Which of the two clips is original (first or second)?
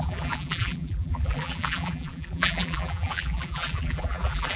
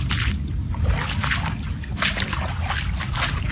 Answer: second